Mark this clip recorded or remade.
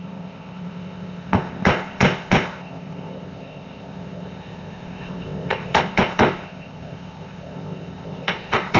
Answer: remade